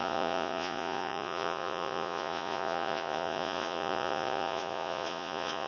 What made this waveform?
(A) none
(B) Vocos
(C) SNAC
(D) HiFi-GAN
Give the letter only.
B